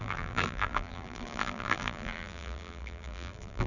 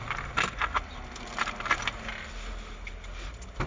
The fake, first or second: first